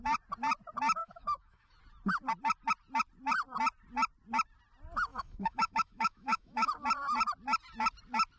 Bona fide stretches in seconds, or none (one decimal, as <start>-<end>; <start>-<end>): 0.0-1.0; 1.8-5.1; 6.7-8.4